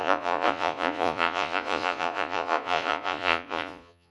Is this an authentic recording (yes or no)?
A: no